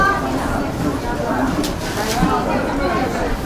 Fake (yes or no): no